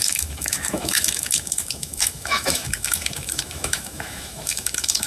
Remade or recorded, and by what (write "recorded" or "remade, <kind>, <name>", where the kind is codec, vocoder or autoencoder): remade, autoencoder, DAC-VAE